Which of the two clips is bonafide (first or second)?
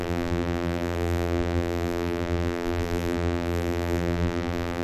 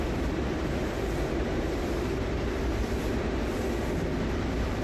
second